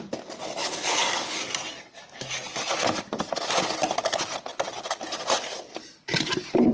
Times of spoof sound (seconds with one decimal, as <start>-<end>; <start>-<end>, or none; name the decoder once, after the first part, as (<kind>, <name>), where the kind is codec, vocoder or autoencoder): 0.6-1.4 (codec, HILCodec)